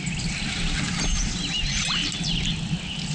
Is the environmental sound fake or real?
real